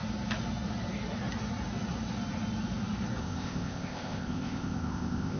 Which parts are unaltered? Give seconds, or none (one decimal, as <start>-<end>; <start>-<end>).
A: 0.0-3.2